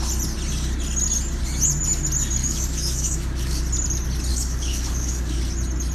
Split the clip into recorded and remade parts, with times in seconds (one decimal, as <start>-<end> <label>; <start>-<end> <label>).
0.0-2.4 recorded; 2.4-3.6 remade; 3.6-4.3 recorded; 4.3-5.4 remade; 5.4-5.9 recorded